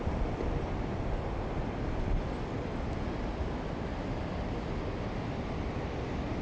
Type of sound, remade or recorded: recorded